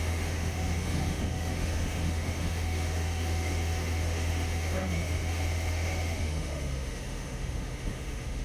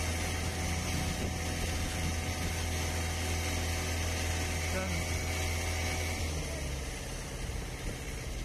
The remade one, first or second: first